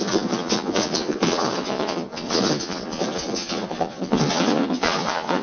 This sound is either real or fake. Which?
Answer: fake